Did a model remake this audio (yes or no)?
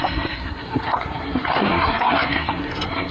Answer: yes